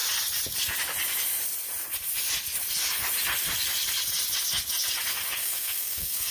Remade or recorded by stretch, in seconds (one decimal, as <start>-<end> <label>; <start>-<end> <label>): 0.0-5.4 recorded; 5.4-6.3 remade